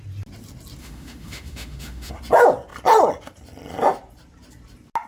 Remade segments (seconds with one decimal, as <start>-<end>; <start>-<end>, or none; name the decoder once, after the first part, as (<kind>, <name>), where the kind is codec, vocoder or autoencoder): 0.8-2.1 (autoencoder, DAC-VAE)